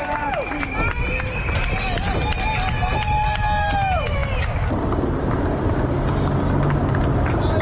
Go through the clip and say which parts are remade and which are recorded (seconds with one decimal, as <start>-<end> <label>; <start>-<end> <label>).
0.0-7.6 recorded